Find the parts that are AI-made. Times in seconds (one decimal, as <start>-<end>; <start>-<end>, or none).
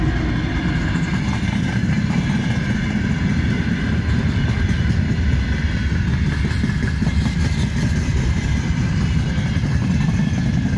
8.1-9.0